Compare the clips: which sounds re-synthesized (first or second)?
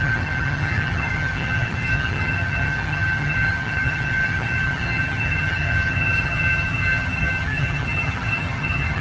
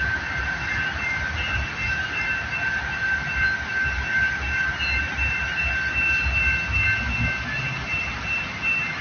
first